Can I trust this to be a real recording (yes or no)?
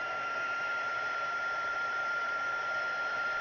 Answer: no